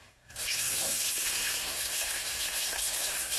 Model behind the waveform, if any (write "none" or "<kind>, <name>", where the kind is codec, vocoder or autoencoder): codec, SNAC